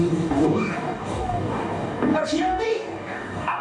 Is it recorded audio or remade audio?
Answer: remade